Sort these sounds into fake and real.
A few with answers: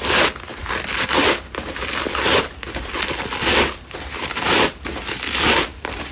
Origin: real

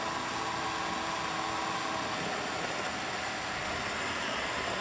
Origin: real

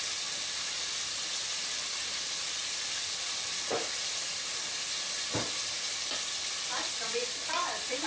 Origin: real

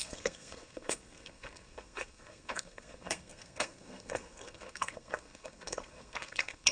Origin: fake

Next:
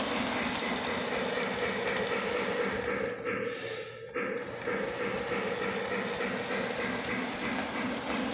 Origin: real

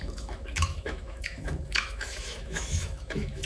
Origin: fake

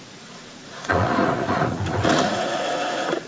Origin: fake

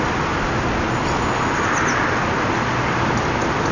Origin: real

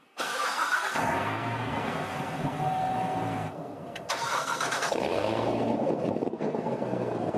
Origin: fake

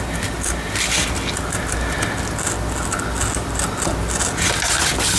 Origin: real